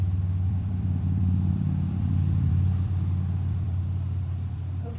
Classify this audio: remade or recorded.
remade